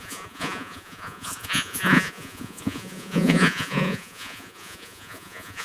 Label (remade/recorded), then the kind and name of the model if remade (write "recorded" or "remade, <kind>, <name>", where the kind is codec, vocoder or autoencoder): remade, vocoder, Vocos